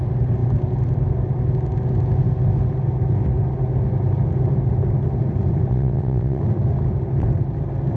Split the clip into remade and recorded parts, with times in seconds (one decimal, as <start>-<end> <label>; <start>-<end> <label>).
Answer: 0.0-5.7 recorded; 5.7-6.4 remade; 6.4-8.0 recorded